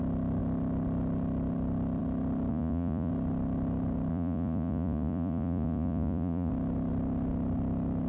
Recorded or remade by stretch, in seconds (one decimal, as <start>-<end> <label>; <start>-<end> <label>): 0.0-2.5 recorded; 2.5-3.1 remade; 3.1-4.1 recorded; 4.1-6.5 remade; 6.5-8.1 recorded